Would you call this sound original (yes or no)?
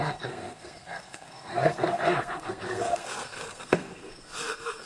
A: no